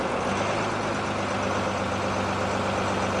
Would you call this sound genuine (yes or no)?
yes